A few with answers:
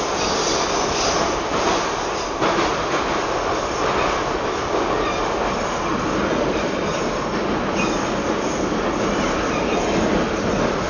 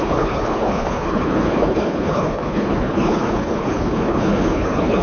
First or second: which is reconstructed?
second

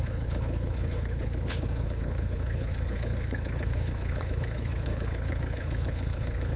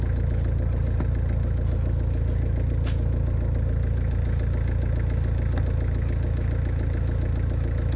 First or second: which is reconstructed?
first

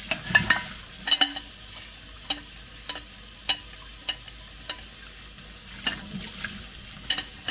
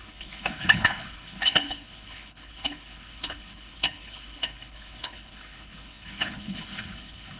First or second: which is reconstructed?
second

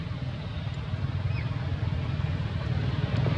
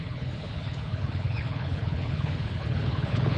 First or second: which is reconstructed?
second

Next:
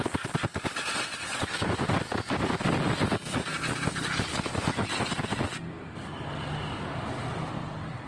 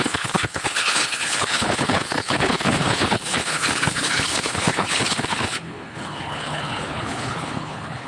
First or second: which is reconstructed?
second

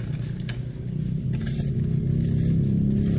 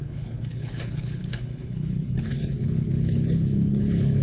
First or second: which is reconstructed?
second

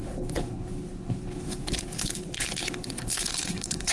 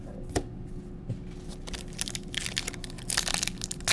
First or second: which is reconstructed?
first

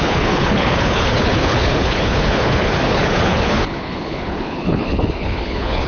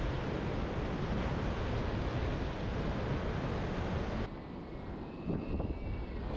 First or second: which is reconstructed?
first